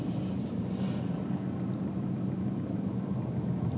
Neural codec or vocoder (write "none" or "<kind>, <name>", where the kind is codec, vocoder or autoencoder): none